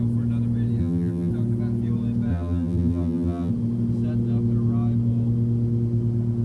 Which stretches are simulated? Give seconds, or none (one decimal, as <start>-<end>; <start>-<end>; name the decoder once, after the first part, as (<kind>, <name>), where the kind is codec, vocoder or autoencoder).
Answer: 0.8-1.3 (vocoder, BigVGAN v2); 2.3-3.5